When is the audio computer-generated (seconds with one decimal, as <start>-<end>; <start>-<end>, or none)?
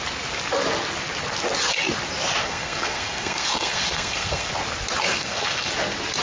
2.4-4.5; 5.1-5.7